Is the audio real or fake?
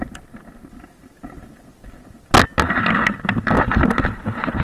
real